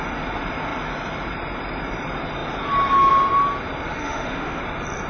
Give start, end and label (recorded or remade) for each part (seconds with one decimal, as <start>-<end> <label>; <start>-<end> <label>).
0.0-4.0 recorded; 4.0-4.6 remade; 4.6-5.1 recorded